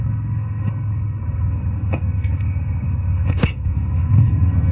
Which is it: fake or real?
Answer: fake